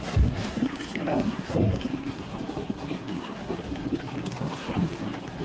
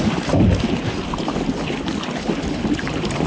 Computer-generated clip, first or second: first